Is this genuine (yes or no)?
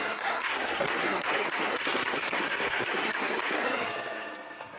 no